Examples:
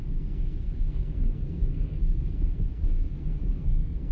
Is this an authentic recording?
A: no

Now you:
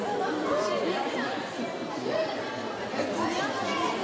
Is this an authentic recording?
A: yes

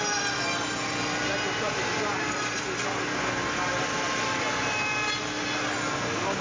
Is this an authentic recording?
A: yes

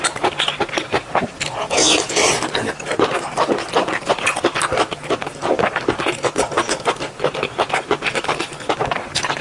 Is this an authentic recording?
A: yes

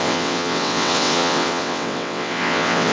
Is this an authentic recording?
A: no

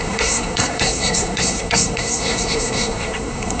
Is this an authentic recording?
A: no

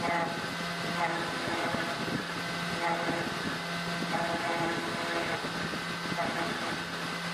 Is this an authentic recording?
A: yes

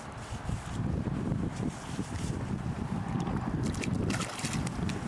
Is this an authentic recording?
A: no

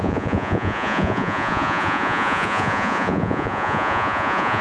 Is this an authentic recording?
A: no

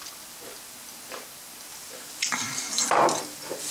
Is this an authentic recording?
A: yes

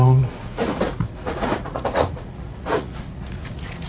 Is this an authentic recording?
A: no